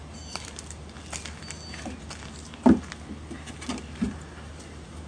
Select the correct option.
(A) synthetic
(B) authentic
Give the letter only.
B